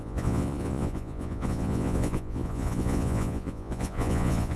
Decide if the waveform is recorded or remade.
remade